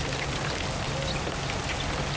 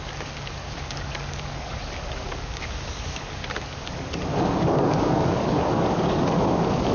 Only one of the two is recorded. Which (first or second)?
first